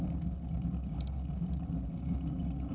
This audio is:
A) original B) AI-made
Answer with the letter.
A